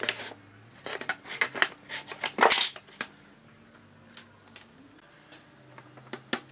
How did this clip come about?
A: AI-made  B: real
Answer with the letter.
B